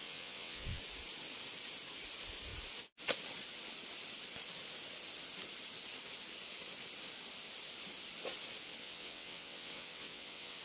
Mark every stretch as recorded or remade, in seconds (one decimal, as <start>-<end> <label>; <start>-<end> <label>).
0.0-0.8 remade; 0.8-8.8 recorded; 8.8-10.6 remade